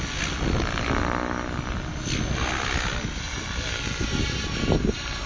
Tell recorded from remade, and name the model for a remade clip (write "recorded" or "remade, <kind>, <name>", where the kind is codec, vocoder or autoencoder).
recorded